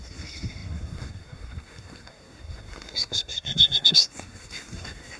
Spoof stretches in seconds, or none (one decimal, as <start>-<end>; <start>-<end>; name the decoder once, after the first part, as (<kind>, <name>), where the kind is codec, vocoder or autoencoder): 0.0-5.2 (codec, SNAC)